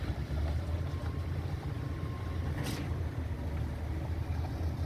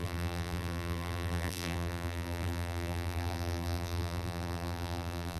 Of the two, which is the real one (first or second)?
first